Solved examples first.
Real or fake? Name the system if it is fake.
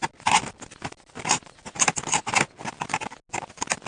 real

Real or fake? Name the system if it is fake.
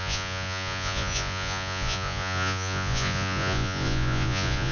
fake, vocoder, Vocos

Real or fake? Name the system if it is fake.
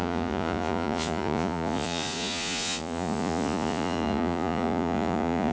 fake, vocoder, Vocos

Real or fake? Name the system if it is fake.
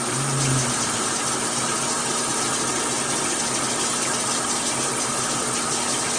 real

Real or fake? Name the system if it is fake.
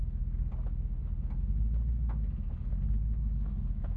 real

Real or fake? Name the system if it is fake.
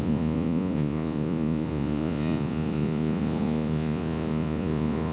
fake, vocoder, Vocos